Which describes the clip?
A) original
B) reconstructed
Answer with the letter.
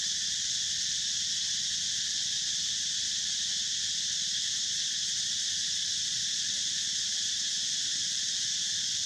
B